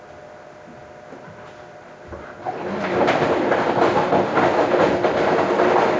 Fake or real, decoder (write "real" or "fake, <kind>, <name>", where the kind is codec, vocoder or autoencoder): real